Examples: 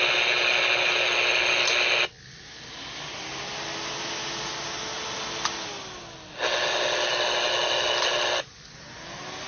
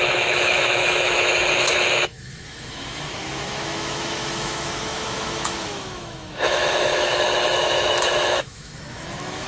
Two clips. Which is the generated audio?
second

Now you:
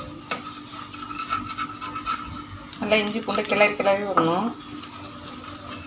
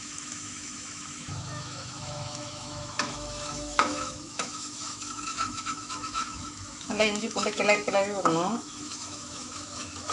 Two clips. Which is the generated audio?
second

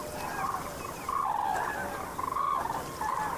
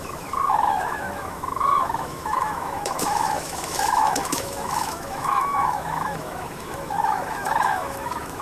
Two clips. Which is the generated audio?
second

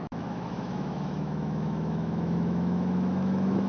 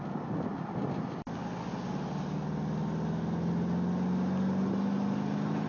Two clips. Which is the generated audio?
first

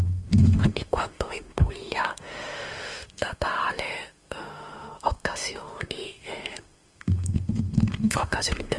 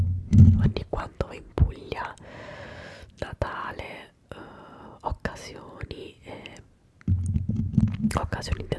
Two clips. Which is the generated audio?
first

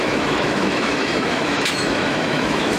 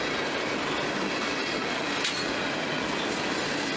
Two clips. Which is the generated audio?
first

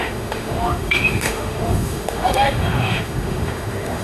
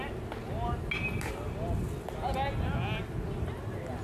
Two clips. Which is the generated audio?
first